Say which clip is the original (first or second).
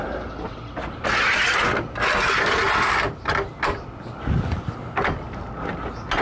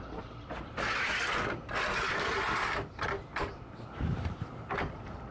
first